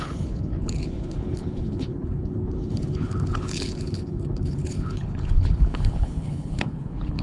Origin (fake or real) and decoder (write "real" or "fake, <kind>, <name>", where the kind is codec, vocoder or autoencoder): fake, codec, HILCodec